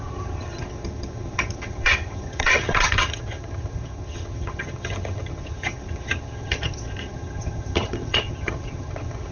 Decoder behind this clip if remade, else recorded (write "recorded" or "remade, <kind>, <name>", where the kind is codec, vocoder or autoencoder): remade, vocoder, HiFi-GAN